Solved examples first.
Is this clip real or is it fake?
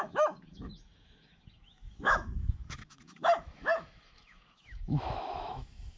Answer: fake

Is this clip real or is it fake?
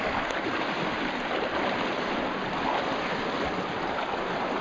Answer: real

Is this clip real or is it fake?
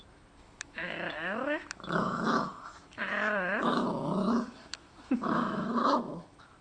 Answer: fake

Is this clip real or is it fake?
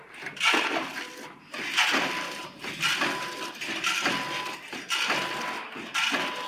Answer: real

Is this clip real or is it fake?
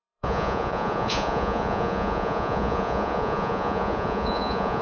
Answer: fake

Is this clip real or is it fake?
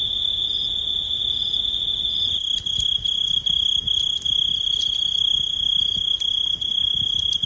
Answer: real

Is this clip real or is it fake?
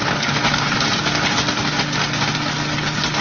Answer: real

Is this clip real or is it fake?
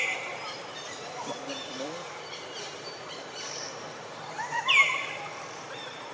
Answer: fake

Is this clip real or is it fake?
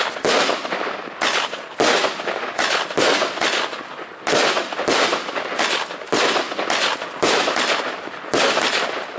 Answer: real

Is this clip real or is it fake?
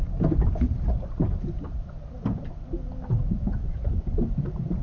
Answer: real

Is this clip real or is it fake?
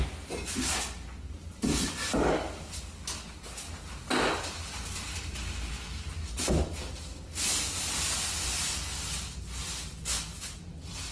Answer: real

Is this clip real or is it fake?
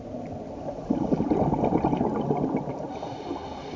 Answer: real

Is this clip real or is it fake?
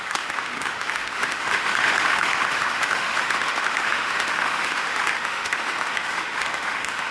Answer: fake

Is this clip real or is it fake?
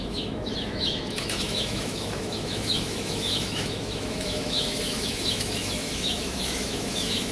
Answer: fake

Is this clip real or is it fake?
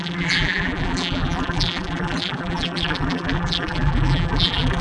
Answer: fake